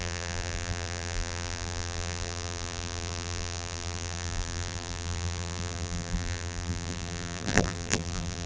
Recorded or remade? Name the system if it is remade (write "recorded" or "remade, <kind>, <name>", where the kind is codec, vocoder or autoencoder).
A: remade, vocoder, BigVGAN v2